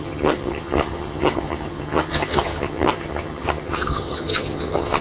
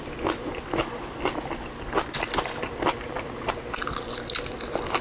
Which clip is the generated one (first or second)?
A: first